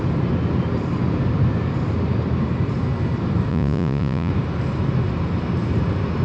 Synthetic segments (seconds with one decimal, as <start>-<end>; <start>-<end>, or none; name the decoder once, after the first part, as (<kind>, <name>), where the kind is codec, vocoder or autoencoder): 3.5-4.3 (vocoder, Vocos)